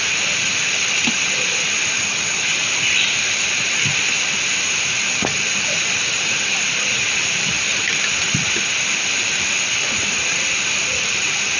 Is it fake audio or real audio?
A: real